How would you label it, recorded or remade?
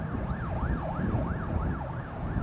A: recorded